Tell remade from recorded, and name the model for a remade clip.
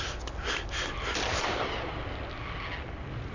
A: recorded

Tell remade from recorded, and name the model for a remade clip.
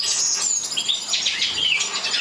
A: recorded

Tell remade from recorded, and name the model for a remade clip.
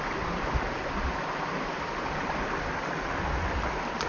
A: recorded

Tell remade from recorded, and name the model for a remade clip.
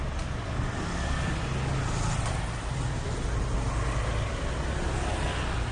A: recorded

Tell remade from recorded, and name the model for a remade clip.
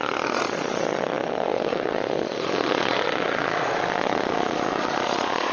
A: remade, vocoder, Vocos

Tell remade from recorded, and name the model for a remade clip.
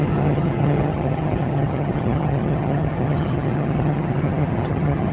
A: remade, vocoder, HiFi-GAN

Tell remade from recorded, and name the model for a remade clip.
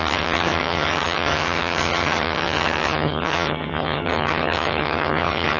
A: remade, vocoder, HiFi-GAN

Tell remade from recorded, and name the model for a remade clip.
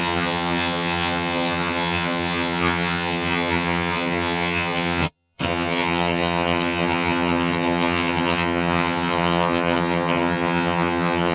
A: remade, vocoder, HiFi-GAN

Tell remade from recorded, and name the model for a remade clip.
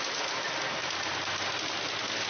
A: recorded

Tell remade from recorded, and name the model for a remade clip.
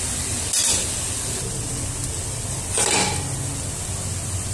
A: recorded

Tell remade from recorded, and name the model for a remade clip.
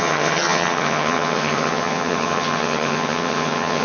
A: remade, vocoder, HiFi-GAN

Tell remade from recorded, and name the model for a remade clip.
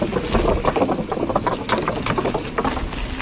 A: recorded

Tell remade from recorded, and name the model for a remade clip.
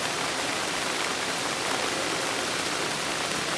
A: remade, vocoder, BigVGAN v2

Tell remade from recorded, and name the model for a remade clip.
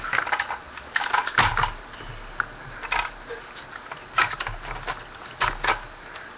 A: recorded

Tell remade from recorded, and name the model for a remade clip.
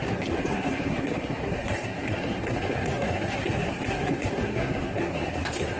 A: remade, codec, SNAC